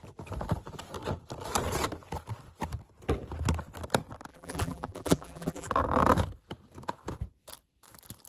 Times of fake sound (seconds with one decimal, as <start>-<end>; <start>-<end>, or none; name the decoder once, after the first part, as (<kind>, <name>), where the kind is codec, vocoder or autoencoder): 4.3-5.7 (vocoder, BigVGAN v2)